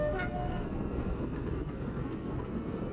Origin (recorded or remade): remade